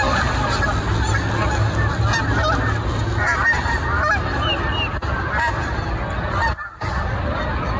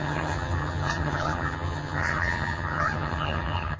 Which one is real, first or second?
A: first